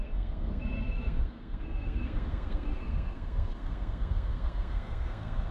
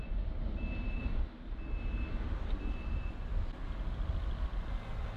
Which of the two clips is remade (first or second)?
first